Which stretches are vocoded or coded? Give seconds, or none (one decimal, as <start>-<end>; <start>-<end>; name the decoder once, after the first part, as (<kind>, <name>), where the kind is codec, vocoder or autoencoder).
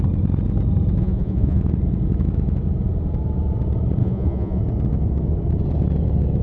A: 1.0-1.6 (vocoder, Vocos); 4.0-4.6